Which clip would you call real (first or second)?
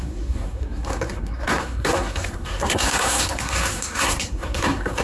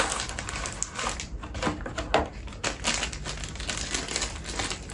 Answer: second